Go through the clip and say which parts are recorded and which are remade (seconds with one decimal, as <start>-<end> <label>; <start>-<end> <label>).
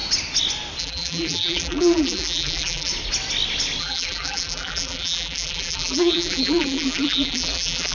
0.0-0.8 recorded; 0.8-2.9 remade; 2.9-3.8 recorded; 3.8-7.9 remade